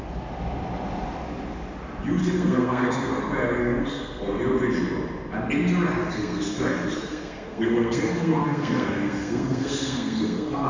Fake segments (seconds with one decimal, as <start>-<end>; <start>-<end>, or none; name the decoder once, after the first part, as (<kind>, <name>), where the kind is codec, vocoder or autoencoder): 2.2-3.2 (codec, SNAC); 3.6-4.4; 6.0-10.7